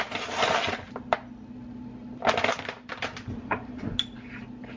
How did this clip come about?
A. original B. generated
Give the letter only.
A